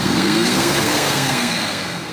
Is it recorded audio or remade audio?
remade